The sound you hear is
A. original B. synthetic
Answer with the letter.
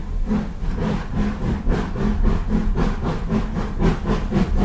A